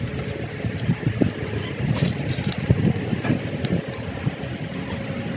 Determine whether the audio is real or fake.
real